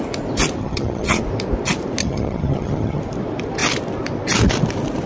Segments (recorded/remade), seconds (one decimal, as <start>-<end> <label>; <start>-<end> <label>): 0.0-0.6 recorded; 0.6-1.2 remade; 1.2-2.0 recorded; 2.0-3.0 remade; 3.0-5.1 recorded